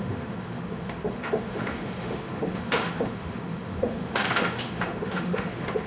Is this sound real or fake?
fake